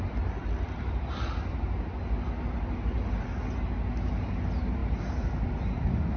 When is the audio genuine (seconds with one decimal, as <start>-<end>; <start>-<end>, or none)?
0.0-6.2